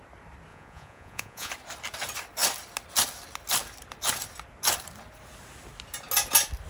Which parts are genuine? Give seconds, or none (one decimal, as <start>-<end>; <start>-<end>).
0.0-0.5; 1.5-6.7